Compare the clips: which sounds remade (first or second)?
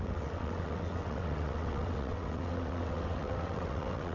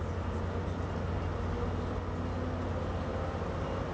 first